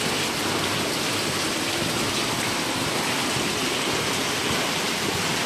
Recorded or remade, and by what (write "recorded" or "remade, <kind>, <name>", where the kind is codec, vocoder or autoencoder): recorded